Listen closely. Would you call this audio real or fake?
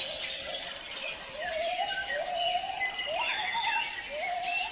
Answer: real